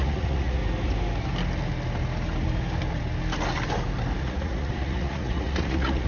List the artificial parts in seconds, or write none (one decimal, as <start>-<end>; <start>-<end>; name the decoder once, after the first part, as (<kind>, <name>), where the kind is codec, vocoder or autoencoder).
0.0-0.6 (vocoder, Vocos); 4.2-6.1